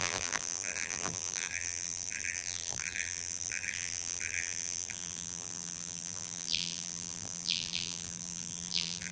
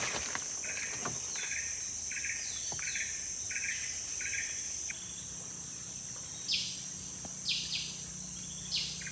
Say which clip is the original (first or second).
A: second